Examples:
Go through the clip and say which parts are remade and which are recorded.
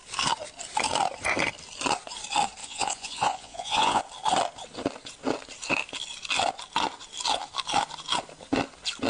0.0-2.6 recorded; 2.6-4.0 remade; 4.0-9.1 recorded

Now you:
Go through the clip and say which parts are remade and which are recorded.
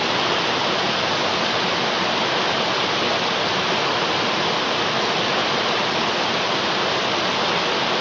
0.0-8.0 recorded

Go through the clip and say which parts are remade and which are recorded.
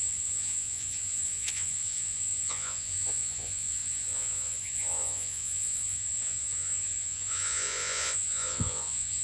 0.0-9.2 remade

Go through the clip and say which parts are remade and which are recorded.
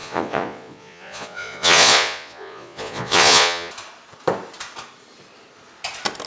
0.0-3.7 remade; 3.7-6.3 recorded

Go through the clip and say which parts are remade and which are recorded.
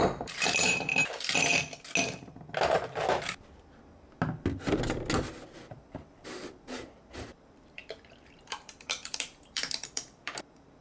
0.0-0.9 remade; 0.9-5.7 recorded; 5.7-10.8 remade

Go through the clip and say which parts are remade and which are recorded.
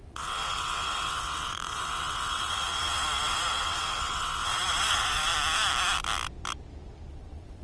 0.0-5.3 remade; 5.3-7.1 recorded; 7.1-7.6 remade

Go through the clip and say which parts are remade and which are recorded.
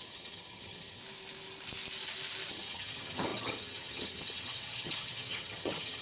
0.0-1.0 remade; 1.0-2.5 recorded; 2.5-6.0 remade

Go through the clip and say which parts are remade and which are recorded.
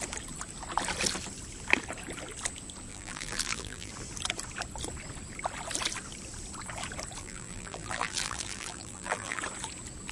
0.0-2.9 recorded; 2.9-3.9 remade; 3.9-7.2 recorded; 7.2-9.4 remade; 9.4-10.1 recorded